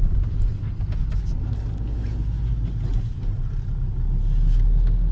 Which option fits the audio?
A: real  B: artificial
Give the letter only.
A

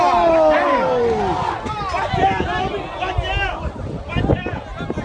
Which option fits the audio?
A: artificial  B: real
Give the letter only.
B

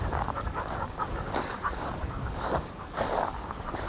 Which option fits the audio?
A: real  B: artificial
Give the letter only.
B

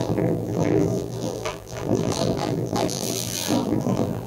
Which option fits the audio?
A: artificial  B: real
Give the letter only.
A